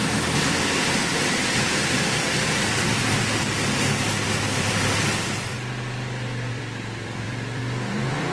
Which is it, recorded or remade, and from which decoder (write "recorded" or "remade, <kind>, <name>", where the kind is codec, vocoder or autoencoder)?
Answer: remade, vocoder, BigVGAN v2